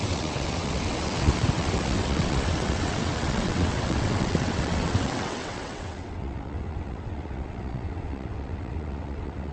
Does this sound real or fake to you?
fake